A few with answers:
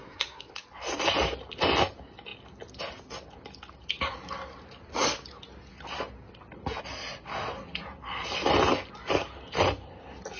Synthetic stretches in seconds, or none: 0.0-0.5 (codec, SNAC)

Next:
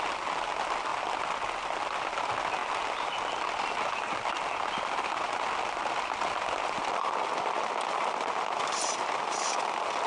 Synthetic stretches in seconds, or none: none

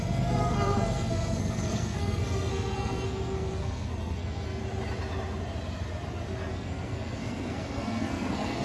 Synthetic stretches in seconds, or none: 0.0-4.6 (codec, SNAC); 6.5-8.6

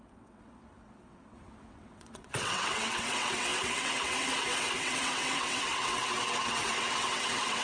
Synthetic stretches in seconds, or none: 0.0-7.6 (vocoder, WaveNeXt)

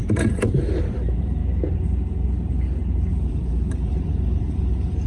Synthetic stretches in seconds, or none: 0.0-1.4 (vocoder, BigVGAN v2); 3.1-5.1